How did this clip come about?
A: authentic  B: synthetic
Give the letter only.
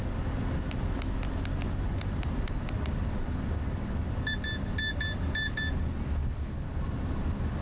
A